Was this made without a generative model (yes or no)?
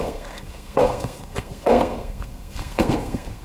no